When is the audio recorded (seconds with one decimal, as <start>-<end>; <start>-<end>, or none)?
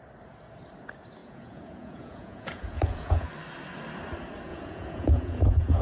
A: 0.0-1.2; 3.3-4.5